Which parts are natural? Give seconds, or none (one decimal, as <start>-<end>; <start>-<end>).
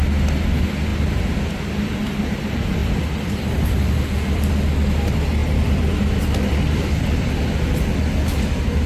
0.0-2.8; 4.5-5.4; 7.3-8.9